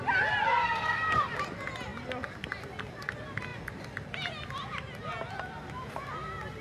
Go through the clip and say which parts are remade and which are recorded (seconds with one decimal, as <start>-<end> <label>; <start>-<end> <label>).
0.0-0.5 recorded; 0.5-1.3 remade; 1.3-6.6 recorded